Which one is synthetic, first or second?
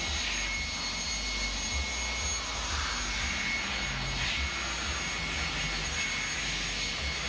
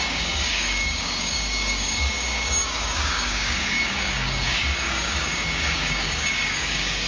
second